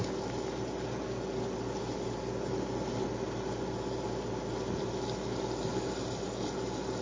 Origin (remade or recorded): recorded